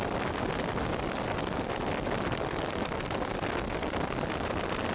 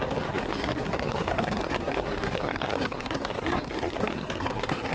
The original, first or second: first